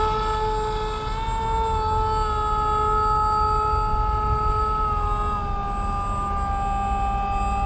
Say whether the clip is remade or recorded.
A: recorded